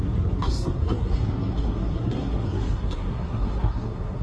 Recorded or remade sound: remade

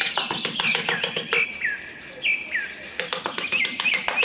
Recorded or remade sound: recorded